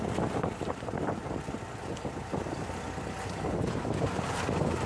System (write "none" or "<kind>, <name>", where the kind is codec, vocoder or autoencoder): none